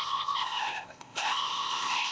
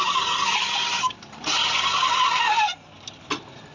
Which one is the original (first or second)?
second